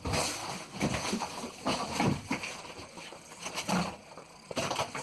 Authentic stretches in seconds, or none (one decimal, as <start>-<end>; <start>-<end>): 0.0-0.4; 1.1-1.7

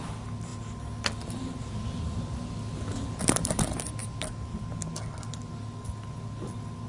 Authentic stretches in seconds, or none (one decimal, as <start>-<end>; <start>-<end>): 0.0-0.5; 3.5-4.0; 6.5-6.9

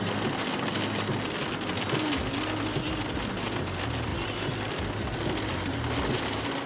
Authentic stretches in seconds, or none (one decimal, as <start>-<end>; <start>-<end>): 0.0-6.7

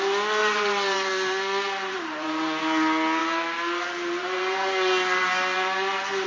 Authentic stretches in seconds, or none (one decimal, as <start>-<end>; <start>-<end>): 0.0-0.4; 2.4-3.2

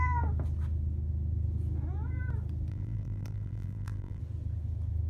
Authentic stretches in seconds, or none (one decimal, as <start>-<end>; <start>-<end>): 0.0-2.7; 4.2-5.1

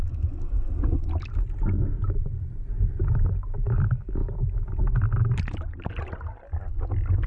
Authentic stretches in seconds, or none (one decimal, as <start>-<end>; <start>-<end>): 0.0-2.0; 2.9-7.3